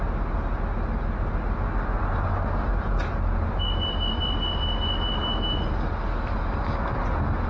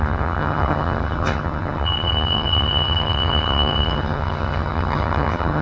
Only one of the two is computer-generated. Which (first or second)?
second